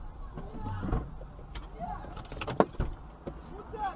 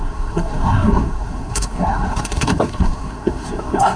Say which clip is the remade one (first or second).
second